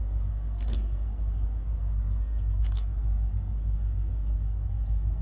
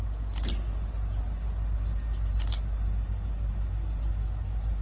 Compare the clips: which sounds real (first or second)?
second